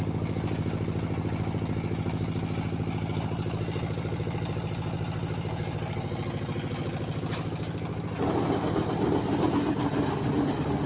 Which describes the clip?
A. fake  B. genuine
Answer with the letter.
B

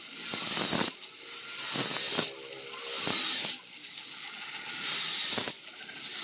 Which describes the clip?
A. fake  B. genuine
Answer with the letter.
B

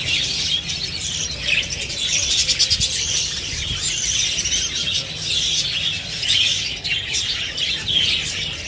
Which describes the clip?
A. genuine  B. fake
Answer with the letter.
A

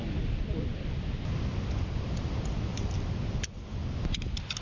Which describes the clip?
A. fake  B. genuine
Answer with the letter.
B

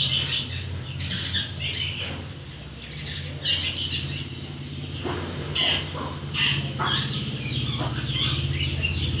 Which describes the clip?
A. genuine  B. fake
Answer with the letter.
A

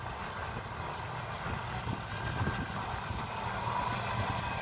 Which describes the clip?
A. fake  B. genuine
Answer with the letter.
B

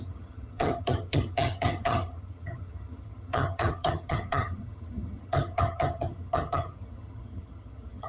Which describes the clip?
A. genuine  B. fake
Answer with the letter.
B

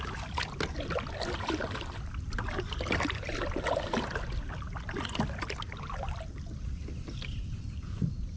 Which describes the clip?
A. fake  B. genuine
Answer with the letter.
B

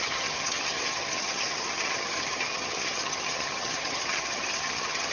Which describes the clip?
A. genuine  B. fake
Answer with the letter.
B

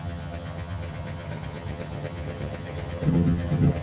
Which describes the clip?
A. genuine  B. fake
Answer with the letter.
B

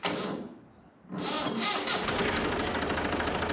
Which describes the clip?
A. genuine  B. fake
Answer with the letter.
A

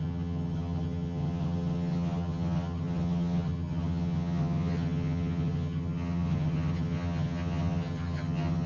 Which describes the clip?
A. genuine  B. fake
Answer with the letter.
B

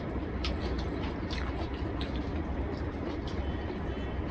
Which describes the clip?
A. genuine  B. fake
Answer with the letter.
A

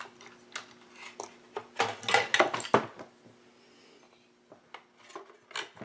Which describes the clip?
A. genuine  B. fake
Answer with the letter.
A